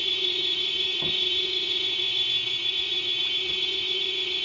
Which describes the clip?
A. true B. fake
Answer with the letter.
B